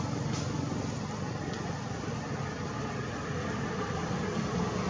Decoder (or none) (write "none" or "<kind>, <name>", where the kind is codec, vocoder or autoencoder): none